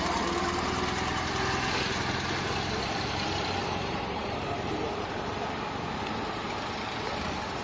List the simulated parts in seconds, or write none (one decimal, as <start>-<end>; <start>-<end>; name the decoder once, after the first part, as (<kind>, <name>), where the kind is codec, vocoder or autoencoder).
0.4-1.3 (vocoder, BigVGAN v2); 3.6-5.1